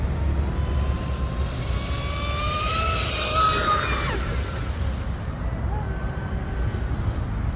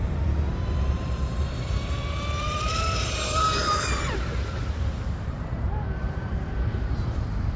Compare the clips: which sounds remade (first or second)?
second